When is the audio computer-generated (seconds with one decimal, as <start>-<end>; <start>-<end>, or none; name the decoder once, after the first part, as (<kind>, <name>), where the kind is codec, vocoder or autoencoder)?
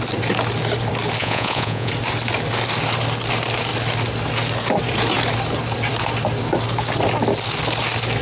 1.2-1.9 (vocoder, Vocos)